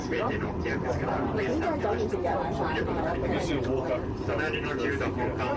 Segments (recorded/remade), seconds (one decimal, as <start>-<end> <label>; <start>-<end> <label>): 0.0-1.5 remade; 1.5-2.3 recorded; 2.3-5.6 remade